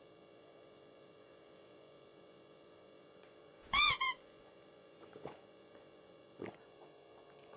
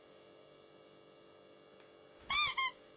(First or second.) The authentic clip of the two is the second